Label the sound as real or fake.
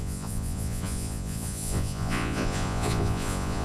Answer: fake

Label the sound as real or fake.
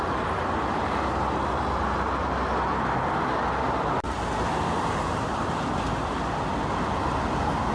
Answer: real